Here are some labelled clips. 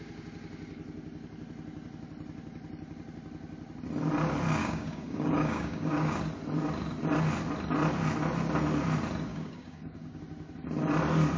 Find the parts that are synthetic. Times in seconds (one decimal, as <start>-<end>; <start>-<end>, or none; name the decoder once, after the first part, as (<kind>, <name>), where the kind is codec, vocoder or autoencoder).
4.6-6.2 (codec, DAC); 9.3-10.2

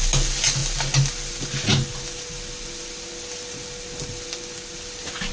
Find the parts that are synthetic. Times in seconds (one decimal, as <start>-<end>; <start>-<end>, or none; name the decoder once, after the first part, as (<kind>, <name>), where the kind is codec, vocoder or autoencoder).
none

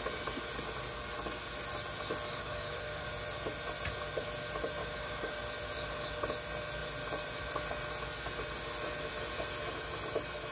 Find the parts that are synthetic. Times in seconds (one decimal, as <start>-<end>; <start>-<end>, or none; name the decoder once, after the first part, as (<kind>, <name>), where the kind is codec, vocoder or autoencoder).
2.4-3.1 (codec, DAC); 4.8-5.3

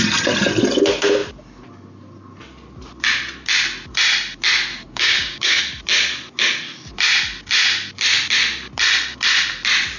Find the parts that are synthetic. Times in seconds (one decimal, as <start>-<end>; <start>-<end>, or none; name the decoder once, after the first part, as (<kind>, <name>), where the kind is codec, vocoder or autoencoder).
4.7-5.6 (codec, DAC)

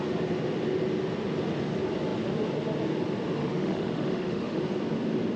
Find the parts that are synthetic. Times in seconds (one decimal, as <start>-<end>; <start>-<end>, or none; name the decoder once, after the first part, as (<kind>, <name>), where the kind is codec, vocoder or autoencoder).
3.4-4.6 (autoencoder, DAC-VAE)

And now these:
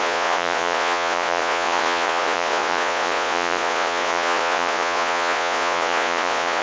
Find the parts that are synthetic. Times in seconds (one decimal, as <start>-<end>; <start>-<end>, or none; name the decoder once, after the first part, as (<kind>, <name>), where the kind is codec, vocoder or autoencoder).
0.0-6.6 (vocoder, Vocos)

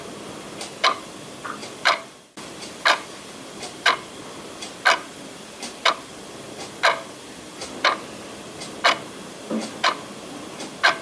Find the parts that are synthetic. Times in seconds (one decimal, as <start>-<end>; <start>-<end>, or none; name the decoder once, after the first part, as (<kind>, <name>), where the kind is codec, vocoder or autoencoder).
none